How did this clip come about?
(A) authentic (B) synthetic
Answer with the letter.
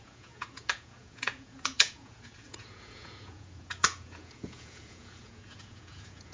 B